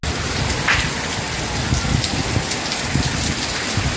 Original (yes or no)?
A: yes